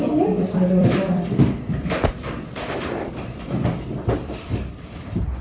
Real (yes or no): no